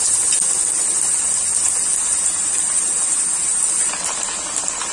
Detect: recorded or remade recorded